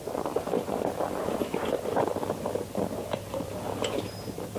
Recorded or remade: recorded